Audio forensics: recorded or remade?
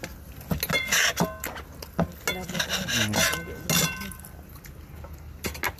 recorded